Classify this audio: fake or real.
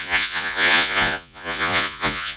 fake